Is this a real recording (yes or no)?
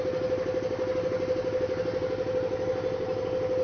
yes